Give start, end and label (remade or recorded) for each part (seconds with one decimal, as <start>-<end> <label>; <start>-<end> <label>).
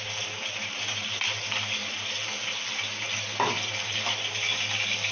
0.0-5.1 recorded